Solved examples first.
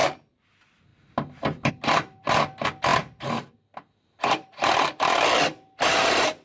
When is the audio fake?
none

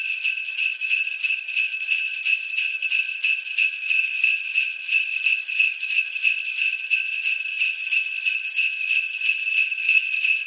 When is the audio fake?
none